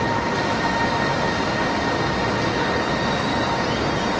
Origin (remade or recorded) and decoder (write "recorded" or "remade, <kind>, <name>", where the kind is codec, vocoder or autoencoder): recorded